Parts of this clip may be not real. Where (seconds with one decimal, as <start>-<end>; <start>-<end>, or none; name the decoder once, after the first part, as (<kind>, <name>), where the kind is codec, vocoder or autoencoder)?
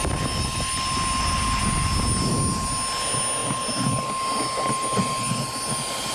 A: none